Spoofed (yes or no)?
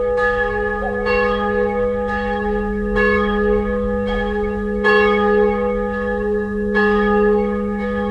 yes